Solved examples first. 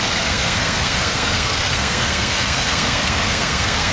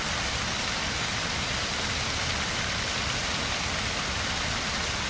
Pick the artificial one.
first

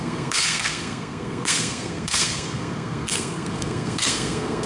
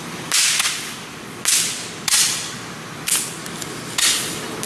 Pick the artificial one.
first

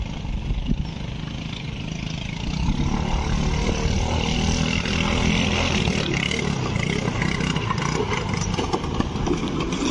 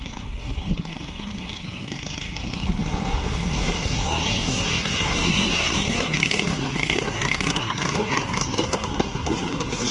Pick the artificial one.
second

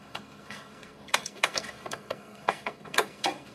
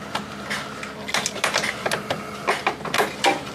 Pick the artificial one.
first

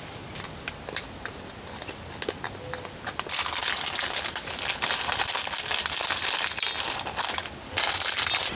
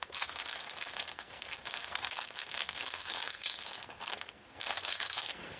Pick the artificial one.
second